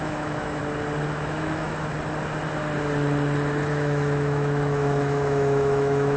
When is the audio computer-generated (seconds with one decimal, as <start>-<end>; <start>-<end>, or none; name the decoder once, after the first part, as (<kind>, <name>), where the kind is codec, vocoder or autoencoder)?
0.0-0.6 (autoencoder, DAC-VAE); 1.1-1.9; 3.7-6.2